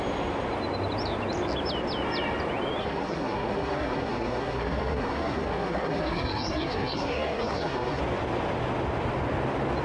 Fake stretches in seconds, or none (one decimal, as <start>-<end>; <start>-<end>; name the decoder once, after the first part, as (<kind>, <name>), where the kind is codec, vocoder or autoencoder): 2.8-8.0 (codec, SNAC)